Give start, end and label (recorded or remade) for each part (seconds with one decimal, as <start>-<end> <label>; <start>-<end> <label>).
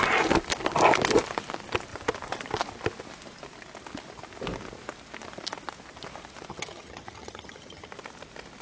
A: 0.0-6.5 recorded; 6.5-7.9 remade; 7.9-8.6 recorded